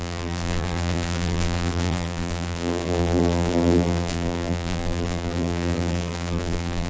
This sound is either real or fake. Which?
fake